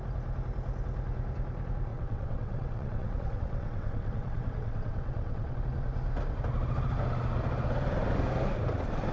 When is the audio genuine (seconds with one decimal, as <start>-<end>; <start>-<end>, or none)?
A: 0.0-1.9; 5.6-9.1